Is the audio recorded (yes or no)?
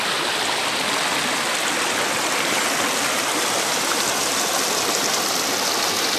yes